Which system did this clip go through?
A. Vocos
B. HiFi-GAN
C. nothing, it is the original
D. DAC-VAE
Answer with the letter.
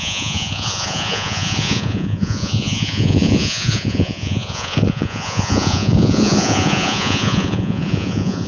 A